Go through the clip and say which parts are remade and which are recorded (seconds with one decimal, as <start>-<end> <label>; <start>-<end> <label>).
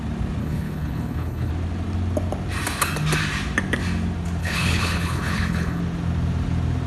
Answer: 0.0-0.4 recorded; 0.4-1.5 remade; 1.5-4.4 recorded; 4.4-5.8 remade; 5.8-6.9 recorded